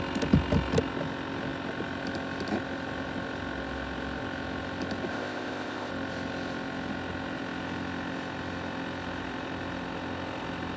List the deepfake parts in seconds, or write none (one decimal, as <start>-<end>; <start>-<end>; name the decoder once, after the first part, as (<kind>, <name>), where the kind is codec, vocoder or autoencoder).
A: 5.1-5.9 (codec, ZipCodec)